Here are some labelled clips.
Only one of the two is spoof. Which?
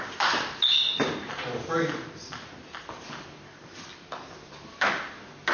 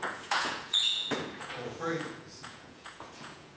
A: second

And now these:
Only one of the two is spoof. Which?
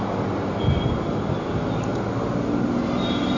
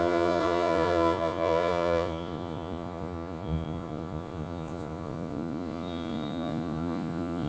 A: second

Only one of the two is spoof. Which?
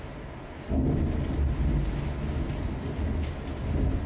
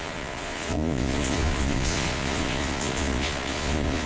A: second